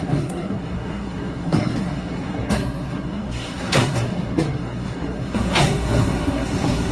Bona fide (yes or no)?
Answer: no